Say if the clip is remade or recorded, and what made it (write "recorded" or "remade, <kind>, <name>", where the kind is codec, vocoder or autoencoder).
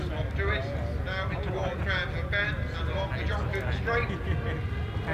recorded